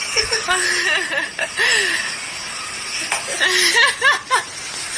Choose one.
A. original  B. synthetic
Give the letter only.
A